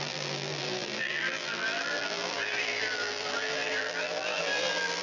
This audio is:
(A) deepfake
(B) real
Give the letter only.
A